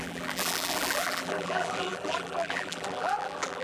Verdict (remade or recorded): remade